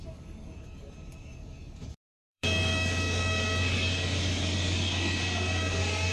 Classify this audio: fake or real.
fake